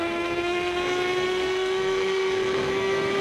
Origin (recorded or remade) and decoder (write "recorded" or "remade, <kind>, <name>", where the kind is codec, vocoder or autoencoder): remade, codec, SNAC